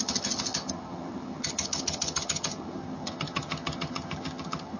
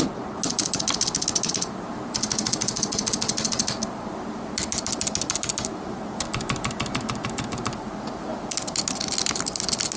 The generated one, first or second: first